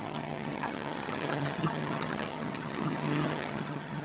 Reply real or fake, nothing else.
fake